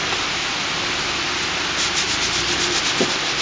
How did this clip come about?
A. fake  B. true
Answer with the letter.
B